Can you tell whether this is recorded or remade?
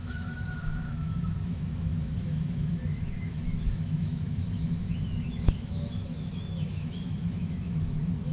remade